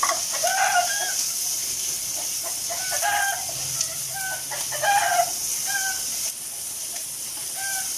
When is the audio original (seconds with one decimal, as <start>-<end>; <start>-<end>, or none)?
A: 0.0-8.0